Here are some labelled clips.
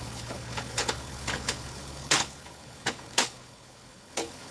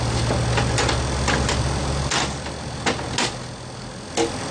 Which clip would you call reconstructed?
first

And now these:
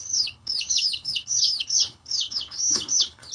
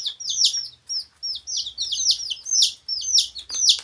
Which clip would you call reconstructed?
first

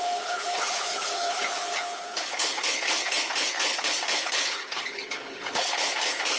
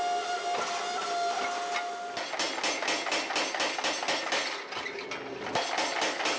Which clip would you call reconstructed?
first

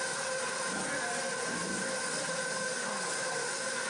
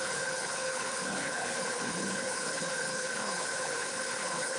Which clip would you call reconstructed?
second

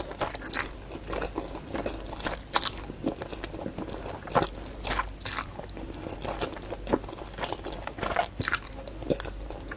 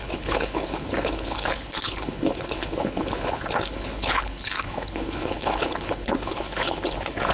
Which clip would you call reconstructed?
second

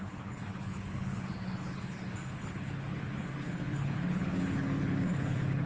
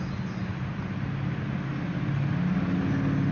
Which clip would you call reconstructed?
first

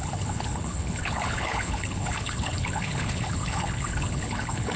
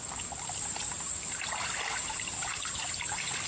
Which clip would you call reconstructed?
first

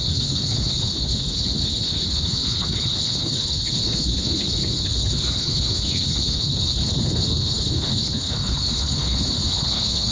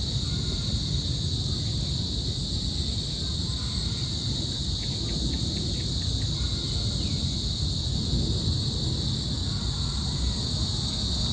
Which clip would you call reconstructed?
first